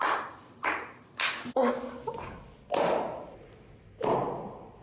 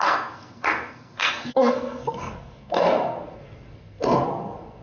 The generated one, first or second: second